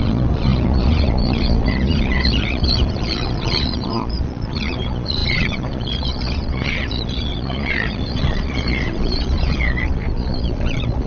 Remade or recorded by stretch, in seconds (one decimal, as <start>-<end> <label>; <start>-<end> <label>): 0.0-11.1 remade